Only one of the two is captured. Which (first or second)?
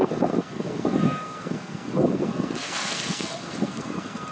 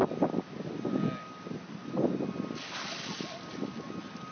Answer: second